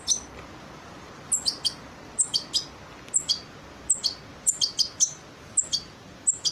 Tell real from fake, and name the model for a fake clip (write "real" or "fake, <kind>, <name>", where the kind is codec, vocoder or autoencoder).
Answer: real